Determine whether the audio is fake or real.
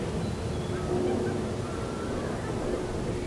real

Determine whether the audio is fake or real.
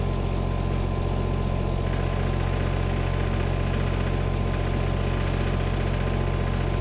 real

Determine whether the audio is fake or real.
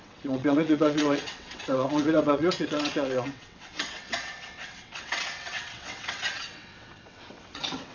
fake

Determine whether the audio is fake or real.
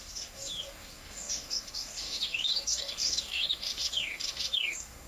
fake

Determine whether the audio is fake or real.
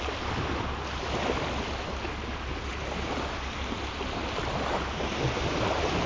real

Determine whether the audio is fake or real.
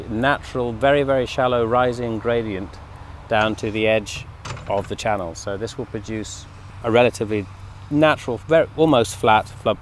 real